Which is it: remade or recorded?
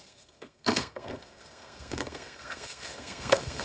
remade